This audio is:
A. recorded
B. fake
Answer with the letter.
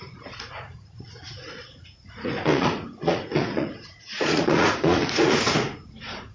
B